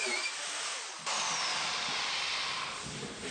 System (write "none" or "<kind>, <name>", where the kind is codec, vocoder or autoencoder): none